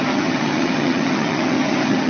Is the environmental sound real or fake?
fake